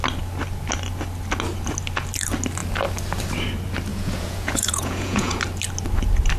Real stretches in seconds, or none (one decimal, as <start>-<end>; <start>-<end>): 0.0-3.9; 5.4-6.4